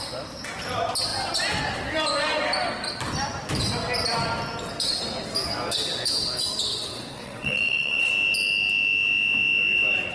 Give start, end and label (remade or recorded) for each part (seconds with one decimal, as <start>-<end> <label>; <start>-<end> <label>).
0.0-6.7 recorded; 6.7-8.1 remade; 8.1-10.1 recorded